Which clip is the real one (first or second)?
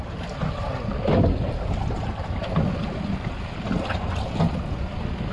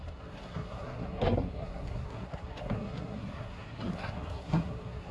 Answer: first